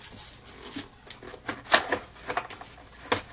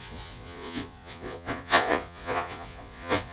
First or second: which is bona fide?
first